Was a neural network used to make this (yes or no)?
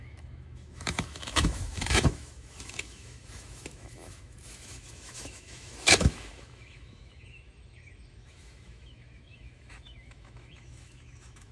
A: yes